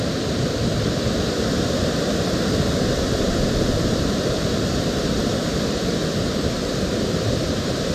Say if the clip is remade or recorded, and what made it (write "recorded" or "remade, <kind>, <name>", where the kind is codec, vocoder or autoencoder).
recorded